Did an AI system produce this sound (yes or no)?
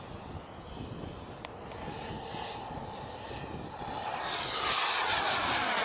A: no